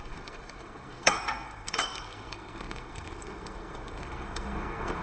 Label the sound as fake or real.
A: fake